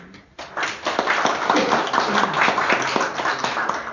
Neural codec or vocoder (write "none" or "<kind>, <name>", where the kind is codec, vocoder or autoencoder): none